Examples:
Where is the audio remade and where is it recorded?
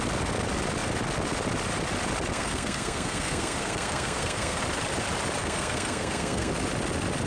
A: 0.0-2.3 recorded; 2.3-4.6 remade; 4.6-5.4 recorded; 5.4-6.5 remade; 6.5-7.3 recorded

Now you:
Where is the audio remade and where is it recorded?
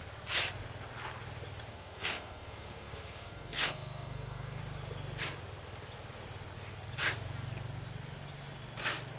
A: 0.0-1.7 recorded; 1.7-4.6 remade; 4.6-9.2 recorded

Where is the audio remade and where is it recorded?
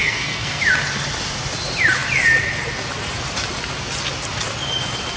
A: 0.0-0.6 remade; 0.6-5.2 recorded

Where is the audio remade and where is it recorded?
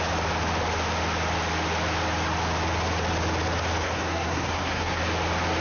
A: 0.0-3.8 recorded; 3.8-5.0 remade; 5.0-5.6 recorded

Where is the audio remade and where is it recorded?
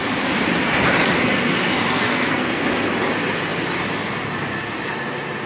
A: 0.0-2.0 recorded; 2.0-2.6 remade; 2.6-5.5 recorded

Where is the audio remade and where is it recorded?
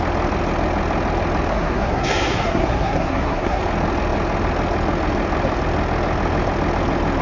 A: 0.0-1.5 recorded; 1.5-3.6 remade; 3.6-7.2 recorded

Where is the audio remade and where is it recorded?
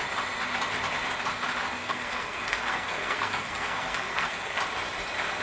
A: 0.0-1.8 recorded; 1.8-4.6 remade; 4.6-5.4 recorded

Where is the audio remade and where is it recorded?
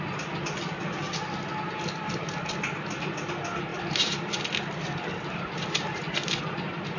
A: 0.0-7.0 recorded